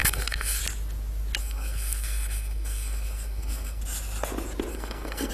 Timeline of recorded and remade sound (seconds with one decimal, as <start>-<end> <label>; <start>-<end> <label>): 0.0-0.6 remade; 0.6-1.4 recorded; 1.4-3.8 remade; 3.8-4.7 recorded; 4.7-5.3 remade